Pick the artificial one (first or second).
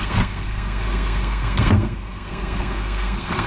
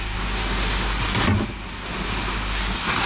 first